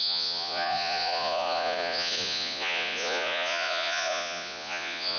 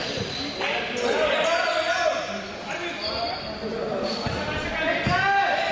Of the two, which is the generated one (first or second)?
first